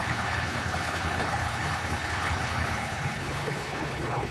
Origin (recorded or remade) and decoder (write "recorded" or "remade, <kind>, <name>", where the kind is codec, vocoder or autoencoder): remade, codec, HILCodec